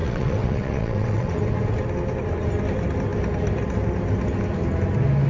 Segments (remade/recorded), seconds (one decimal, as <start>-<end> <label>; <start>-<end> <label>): 0.0-1.4 remade; 1.4-5.3 recorded